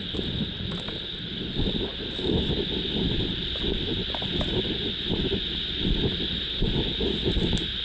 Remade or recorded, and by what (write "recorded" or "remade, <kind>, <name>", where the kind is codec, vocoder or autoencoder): recorded